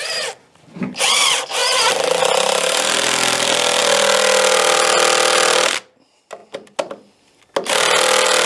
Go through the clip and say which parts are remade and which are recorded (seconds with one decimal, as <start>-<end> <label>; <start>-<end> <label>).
0.0-1.6 recorded; 1.6-2.2 remade; 2.2-8.5 recorded